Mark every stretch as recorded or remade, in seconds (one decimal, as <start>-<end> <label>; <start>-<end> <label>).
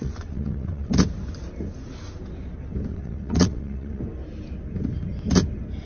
0.0-0.9 remade; 0.9-2.9 recorded; 2.9-4.0 remade; 4.0-5.8 recorded